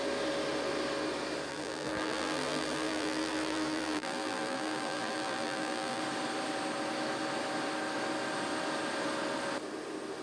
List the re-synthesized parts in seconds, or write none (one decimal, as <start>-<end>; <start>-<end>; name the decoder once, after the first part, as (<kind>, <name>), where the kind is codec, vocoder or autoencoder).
1.5-6.0 (vocoder, BigVGAN v2)